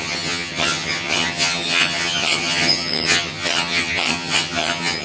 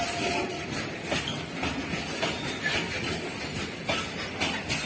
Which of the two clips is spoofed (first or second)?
first